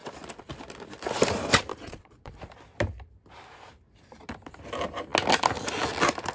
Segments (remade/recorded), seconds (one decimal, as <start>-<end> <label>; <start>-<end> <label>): 0.0-1.7 recorded; 1.7-2.3 remade; 2.3-6.3 recorded